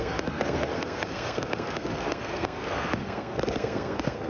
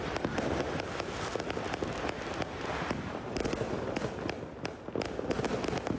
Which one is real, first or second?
second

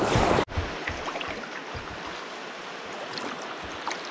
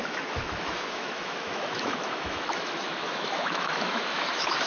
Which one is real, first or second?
first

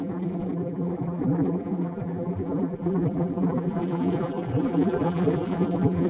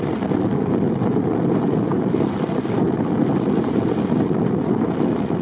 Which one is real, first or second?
second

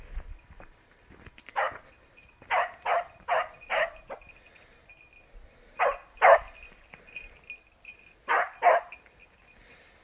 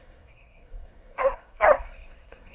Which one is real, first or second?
first